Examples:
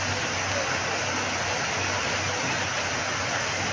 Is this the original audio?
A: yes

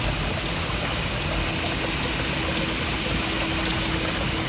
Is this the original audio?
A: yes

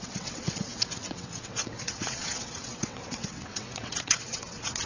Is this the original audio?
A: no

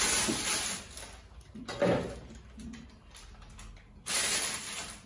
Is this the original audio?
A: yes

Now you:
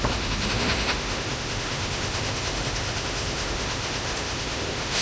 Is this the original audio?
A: no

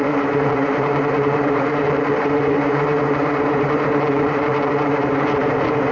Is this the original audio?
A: no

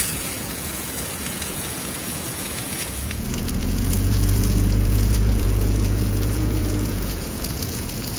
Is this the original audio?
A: no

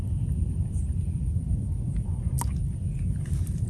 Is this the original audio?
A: yes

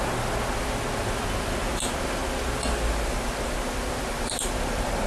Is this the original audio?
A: yes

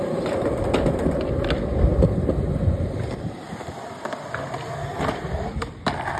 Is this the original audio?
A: yes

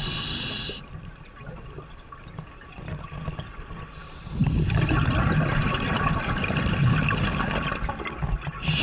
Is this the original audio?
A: yes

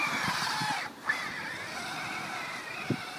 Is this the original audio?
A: no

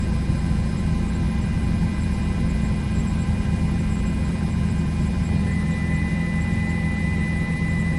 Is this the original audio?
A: no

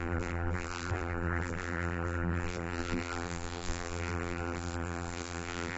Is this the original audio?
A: no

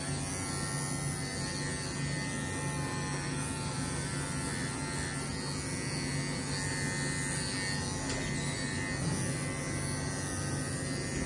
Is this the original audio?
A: yes